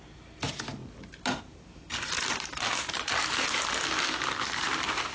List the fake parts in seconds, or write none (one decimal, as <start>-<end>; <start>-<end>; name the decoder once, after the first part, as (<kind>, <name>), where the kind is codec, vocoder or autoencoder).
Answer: none